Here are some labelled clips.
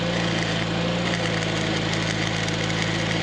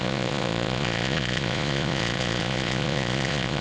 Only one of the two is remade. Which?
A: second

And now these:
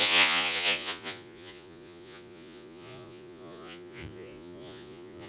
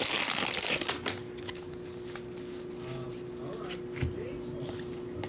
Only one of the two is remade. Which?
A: first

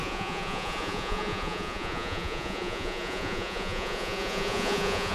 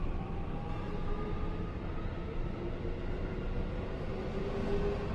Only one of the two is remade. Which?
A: first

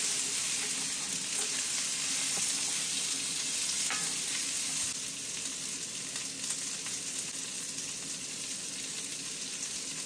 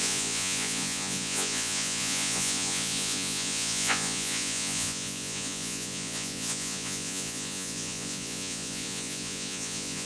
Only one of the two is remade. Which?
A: second